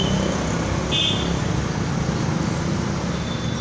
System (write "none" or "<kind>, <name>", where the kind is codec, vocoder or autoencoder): none